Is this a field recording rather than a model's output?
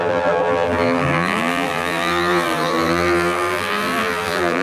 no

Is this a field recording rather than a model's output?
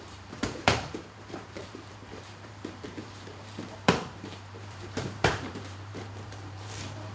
no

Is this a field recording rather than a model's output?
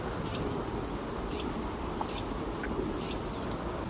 yes